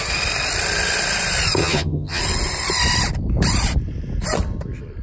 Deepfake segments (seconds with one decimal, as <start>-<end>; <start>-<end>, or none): 1.6-2.2